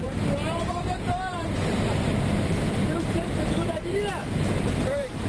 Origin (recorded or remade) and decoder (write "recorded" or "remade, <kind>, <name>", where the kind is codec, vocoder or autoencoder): remade, vocoder, BigVGAN v2